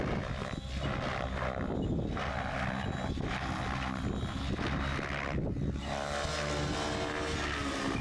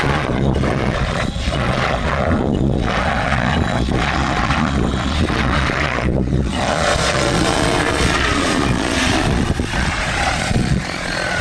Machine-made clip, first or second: second